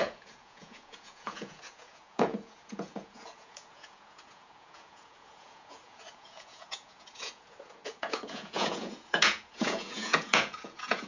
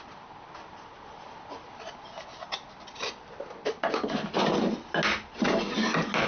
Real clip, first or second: second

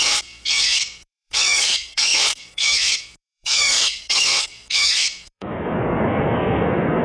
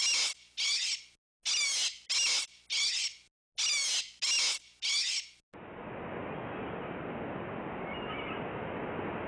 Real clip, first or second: second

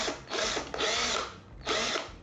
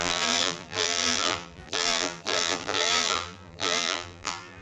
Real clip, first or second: first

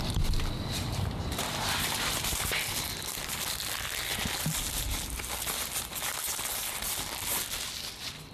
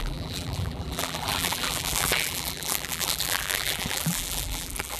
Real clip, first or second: first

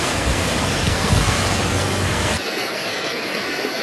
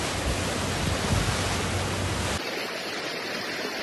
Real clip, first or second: second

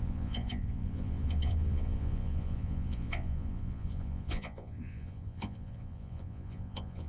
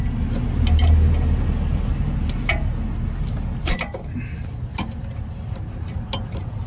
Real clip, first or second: second